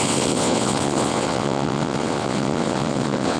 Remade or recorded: remade